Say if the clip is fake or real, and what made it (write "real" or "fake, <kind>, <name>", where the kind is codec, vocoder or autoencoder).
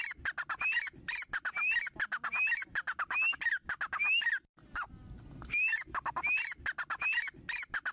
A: real